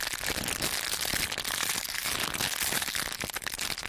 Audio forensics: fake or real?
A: real